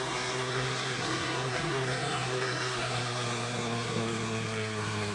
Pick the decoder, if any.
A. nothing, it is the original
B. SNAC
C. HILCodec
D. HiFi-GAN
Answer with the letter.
B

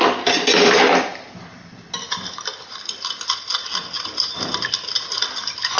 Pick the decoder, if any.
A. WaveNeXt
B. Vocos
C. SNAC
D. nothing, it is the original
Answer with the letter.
D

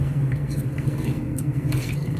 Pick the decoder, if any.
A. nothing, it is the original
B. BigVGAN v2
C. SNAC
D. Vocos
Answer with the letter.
C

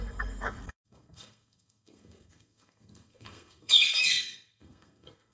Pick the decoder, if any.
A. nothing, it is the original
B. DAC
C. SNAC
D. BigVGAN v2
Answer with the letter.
C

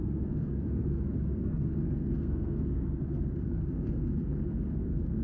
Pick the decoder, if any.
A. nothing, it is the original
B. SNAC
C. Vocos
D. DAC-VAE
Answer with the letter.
B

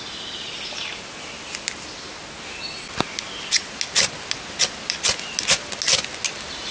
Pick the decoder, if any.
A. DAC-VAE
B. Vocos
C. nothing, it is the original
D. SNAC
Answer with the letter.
C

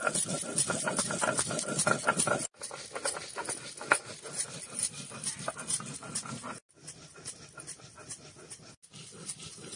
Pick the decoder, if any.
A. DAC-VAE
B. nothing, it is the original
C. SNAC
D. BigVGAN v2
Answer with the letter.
B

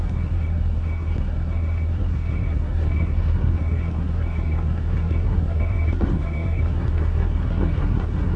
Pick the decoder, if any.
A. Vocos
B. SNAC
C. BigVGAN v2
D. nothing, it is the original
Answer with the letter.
B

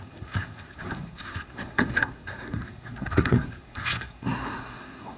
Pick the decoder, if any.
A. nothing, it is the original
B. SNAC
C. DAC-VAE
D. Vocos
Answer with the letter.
B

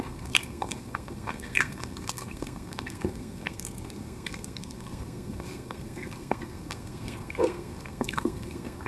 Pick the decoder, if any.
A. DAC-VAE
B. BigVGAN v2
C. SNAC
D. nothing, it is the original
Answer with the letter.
C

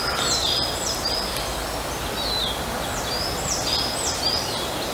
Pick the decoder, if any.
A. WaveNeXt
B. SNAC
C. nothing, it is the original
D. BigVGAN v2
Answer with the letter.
C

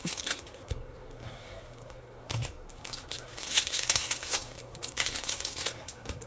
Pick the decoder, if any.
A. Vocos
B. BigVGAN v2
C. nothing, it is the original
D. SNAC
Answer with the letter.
D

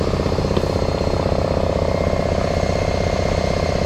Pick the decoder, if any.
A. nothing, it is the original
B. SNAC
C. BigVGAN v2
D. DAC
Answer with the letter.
A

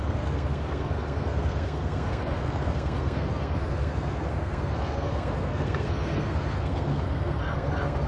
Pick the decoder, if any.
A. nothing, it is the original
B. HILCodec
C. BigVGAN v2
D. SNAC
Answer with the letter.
D